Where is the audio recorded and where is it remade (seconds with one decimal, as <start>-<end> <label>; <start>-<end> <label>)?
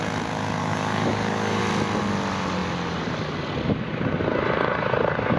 0.0-0.6 recorded; 0.6-1.6 remade; 1.6-5.4 recorded